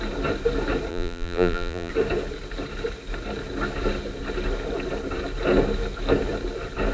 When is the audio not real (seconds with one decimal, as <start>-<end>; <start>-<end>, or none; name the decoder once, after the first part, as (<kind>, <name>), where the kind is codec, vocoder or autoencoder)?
0.9-1.9 (vocoder, BigVGAN v2)